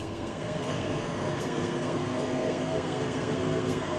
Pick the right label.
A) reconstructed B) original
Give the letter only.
A